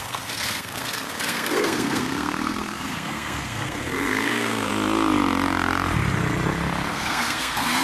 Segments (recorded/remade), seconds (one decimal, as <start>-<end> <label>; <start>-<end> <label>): 0.0-4.7 remade; 4.7-6.9 recorded; 6.9-7.8 remade